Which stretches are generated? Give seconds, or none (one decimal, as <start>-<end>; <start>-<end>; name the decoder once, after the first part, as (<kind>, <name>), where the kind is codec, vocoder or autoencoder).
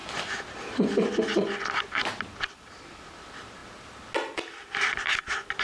none